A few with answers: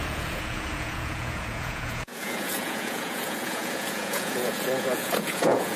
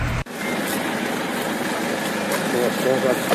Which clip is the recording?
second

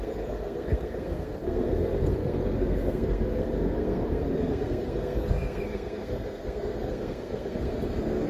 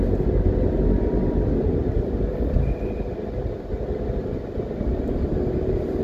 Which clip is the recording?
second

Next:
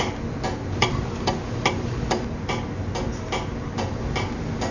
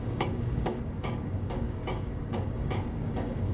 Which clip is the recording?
first